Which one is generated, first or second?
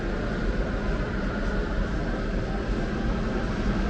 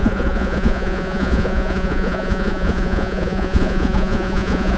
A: second